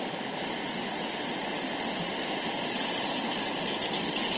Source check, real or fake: real